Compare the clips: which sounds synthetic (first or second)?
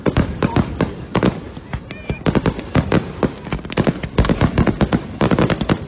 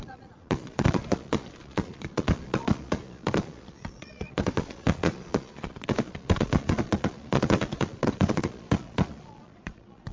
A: second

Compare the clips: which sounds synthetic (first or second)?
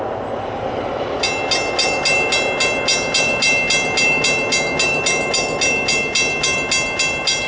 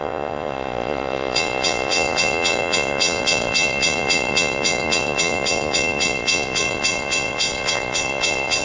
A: second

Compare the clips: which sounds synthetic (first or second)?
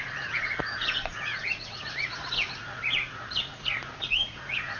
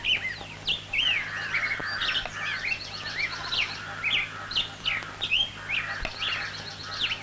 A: first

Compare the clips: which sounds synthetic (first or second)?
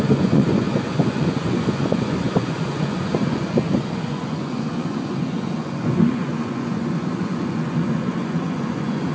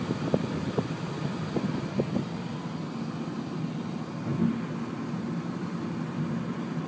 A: first